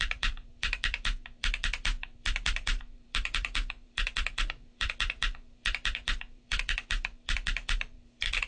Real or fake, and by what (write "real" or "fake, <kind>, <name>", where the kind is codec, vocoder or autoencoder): fake, vocoder, BigVGAN v2